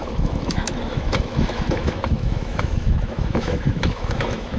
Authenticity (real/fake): fake